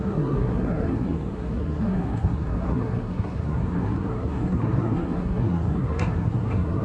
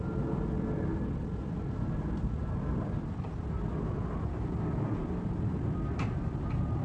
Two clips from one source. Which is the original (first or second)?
second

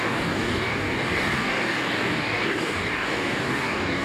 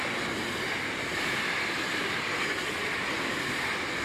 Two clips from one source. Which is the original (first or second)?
second